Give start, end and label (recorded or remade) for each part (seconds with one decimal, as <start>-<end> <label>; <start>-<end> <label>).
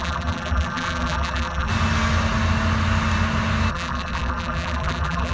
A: 0.0-1.7 remade; 1.7-3.7 recorded; 3.7-5.3 remade